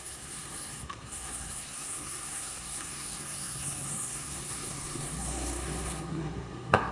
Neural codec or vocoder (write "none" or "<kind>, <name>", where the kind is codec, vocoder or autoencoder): codec, SNAC